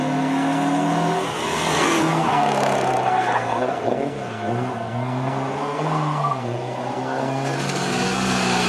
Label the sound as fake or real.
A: fake